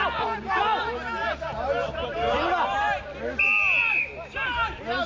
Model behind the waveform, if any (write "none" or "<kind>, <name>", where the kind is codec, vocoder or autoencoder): none